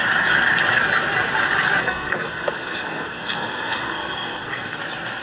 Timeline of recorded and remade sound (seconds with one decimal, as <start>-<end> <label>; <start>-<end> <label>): 0.0-1.8 recorded; 1.8-4.8 remade; 4.8-5.2 recorded